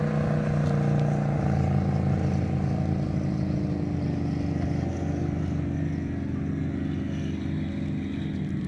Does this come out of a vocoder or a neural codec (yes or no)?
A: no